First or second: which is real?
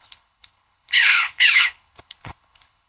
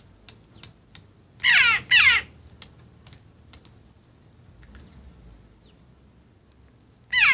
second